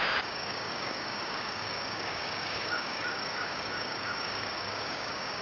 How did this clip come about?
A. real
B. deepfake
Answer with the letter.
B